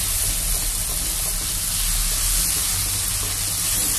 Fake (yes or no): no